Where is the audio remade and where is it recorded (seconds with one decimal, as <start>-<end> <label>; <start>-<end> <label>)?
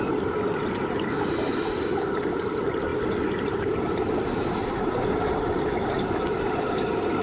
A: 0.0-7.2 recorded